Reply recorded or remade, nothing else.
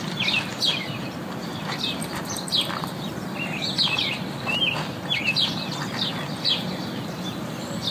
remade